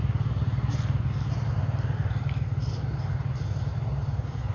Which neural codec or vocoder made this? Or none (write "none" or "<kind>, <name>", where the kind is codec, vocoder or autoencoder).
none